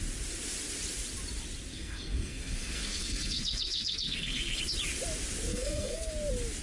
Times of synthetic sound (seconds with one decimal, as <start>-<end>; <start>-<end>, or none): 1.7-4.6; 5.5-6.1